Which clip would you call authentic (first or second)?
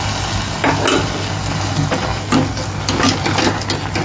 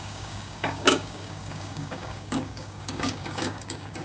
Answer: first